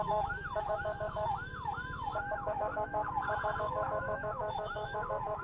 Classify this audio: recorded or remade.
remade